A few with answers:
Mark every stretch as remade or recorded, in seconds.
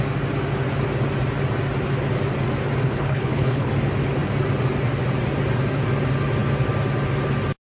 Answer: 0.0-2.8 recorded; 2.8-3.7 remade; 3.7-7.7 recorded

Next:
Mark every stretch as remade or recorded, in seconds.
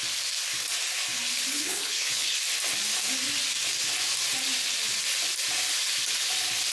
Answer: 0.0-1.5 recorded; 1.5-2.4 remade; 2.4-6.7 recorded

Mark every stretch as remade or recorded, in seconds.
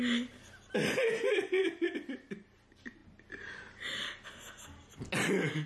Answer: 0.0-5.7 recorded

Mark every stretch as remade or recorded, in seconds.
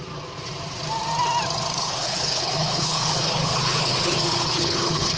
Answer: 0.0-1.8 recorded; 1.8-5.2 remade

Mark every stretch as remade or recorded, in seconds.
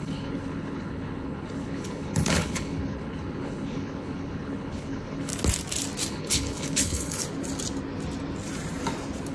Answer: 0.0-5.3 remade; 5.3-6.1 recorded; 6.1-7.2 remade; 7.2-9.3 recorded